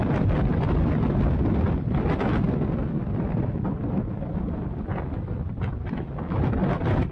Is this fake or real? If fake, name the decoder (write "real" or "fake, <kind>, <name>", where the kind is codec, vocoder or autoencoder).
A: real